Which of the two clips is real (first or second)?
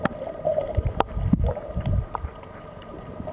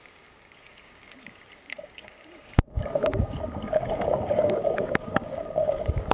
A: first